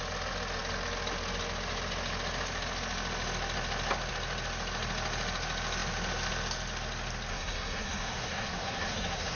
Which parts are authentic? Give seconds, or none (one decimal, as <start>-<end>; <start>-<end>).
0.0-7.3